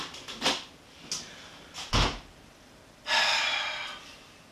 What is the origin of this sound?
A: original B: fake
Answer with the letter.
A